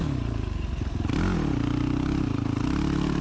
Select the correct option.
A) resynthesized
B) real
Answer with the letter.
B